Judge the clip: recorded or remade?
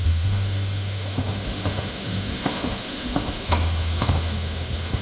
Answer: remade